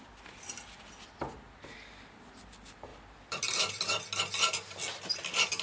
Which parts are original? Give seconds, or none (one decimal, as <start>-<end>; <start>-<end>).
0.0-5.6